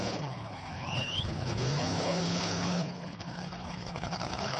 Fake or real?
fake